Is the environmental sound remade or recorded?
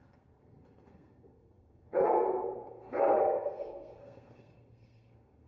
remade